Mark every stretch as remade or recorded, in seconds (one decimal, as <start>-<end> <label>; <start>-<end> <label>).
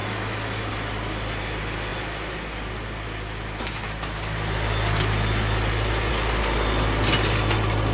0.0-7.9 recorded